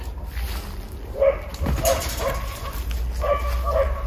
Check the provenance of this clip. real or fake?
real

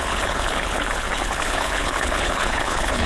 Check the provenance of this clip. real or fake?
fake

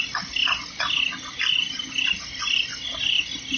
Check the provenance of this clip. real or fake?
real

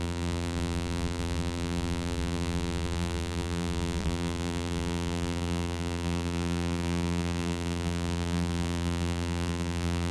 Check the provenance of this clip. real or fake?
fake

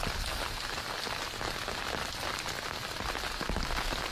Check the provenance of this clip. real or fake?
real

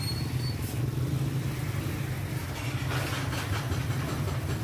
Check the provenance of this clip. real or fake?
real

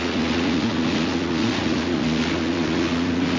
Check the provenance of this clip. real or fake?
fake